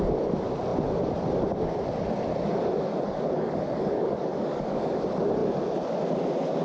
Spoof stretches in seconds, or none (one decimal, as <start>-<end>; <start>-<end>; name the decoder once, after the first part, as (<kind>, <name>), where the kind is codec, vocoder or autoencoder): 2.9-5.0 (codec, DAC)